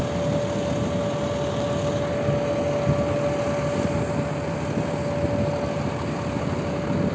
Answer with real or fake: real